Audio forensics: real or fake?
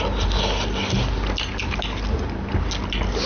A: real